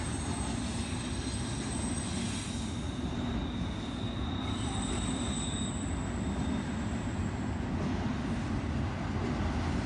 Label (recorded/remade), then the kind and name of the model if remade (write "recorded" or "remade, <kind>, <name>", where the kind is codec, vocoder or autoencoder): recorded